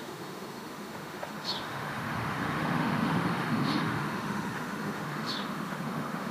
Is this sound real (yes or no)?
no